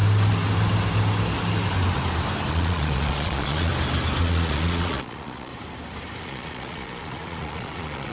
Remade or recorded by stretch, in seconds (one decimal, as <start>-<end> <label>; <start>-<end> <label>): 0.0-2.5 recorded; 2.5-3.7 remade; 3.7-4.2 recorded; 4.2-5.5 remade; 5.5-6.2 recorded; 6.2-8.1 remade

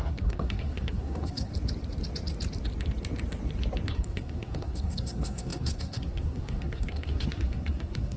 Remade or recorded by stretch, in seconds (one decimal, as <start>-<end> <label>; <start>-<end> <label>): 0.0-1.5 remade; 1.5-3.9 recorded; 3.9-8.2 remade

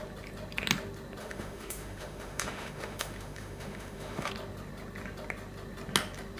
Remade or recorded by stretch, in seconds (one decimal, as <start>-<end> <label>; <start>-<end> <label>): 0.0-1.2 recorded; 1.2-4.3 remade; 4.3-6.4 recorded

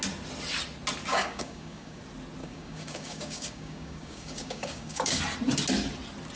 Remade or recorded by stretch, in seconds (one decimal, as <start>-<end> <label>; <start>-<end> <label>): 0.0-1.1 recorded; 1.1-2.0 remade; 2.0-2.4 recorded; 2.4-5.2 remade; 5.2-6.4 recorded

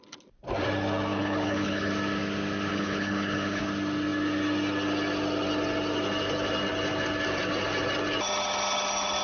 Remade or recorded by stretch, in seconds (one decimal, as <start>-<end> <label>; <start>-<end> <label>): 0.0-1.1 recorded; 1.1-1.9 remade; 1.9-2.7 recorded; 2.7-3.6 remade; 3.6-9.2 recorded

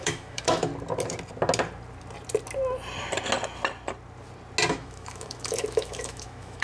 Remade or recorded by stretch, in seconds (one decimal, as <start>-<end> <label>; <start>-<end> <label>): 0.0-0.7 remade; 0.7-4.7 recorded; 4.7-6.6 remade

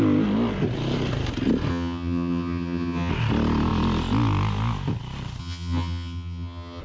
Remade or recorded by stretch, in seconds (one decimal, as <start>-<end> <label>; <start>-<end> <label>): 0.0-1.7 recorded; 1.7-3.1 remade; 3.1-5.4 recorded; 5.4-6.8 remade